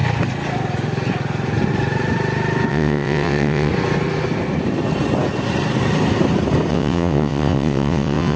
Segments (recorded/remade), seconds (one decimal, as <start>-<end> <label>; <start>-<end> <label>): 0.0-2.7 recorded; 2.7-3.7 remade; 3.7-6.7 recorded; 6.7-8.4 remade